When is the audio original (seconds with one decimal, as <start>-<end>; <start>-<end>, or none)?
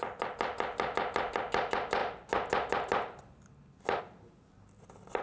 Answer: 0.0-5.2